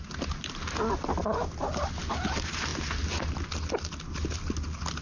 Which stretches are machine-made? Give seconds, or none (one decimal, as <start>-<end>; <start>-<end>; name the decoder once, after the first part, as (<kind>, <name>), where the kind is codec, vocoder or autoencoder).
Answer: none